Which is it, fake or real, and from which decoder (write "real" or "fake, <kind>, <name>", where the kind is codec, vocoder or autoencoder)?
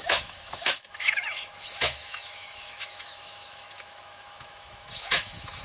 fake, autoencoder, DAC-VAE